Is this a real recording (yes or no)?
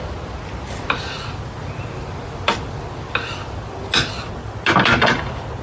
yes